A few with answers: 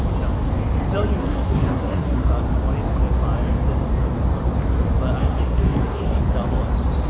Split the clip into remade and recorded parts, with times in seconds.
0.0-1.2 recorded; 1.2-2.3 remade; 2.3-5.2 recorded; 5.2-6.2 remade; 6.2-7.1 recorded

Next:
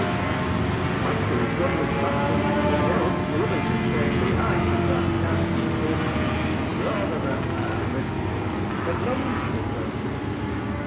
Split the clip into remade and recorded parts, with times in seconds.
0.0-10.9 recorded

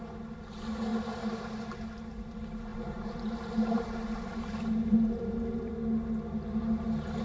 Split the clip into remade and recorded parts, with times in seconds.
0.0-0.9 recorded; 0.9-1.6 remade; 1.6-2.7 recorded; 2.7-5.7 remade; 5.7-7.2 recorded

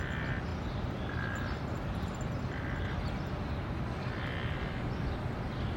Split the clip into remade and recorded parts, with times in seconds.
0.0-5.8 recorded

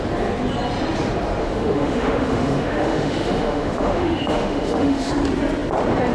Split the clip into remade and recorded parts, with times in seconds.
0.0-1.4 recorded; 1.4-5.1 remade; 5.1-6.1 recorded

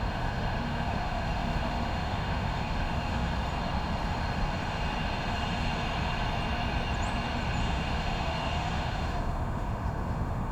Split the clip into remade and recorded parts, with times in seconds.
0.0-3.3 remade; 3.3-7.6 recorded; 7.6-10.5 remade

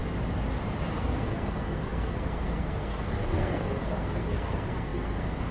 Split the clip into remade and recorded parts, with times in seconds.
0.0-0.9 recorded; 0.9-5.5 remade